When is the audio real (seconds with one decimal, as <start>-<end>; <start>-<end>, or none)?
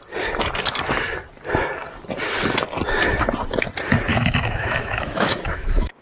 0.0-4.1